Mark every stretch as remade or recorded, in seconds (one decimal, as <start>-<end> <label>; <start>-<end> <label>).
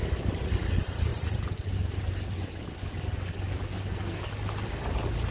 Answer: 0.0-3.7 recorded; 3.7-4.2 remade; 4.2-5.3 recorded